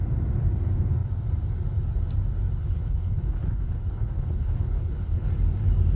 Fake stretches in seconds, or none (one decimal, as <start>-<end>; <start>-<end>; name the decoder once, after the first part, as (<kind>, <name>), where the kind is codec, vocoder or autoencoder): 2.6-5.3 (codec, HILCodec)